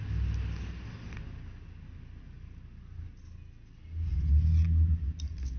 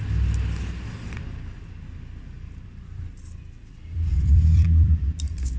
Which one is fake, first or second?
second